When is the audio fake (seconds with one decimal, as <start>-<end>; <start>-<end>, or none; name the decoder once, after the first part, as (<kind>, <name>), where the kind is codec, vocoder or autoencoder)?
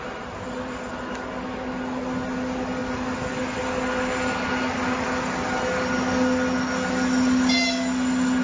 none